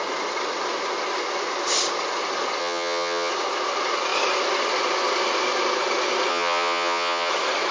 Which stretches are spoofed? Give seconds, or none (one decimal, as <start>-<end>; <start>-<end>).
2.6-3.3; 6.3-7.3